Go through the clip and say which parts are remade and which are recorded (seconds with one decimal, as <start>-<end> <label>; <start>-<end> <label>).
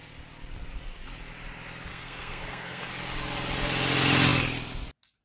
0.0-1.9 recorded; 1.9-2.9 remade; 2.9-5.2 recorded